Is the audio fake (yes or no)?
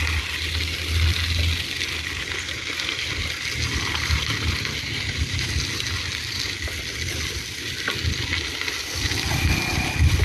no